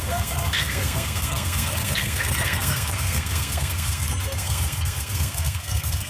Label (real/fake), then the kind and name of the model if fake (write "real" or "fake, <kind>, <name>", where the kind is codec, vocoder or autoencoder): fake, codec, SNAC